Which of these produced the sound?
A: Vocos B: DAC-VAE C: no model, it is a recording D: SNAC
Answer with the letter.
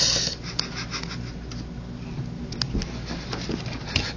C